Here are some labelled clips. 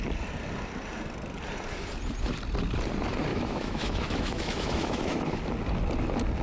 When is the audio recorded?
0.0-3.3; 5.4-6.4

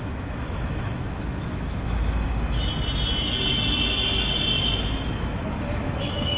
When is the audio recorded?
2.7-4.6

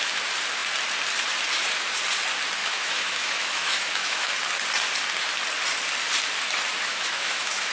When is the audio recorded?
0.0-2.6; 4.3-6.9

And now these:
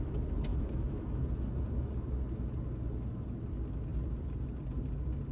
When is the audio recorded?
0.0-0.5; 1.2-5.3

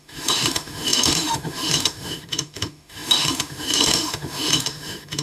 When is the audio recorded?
none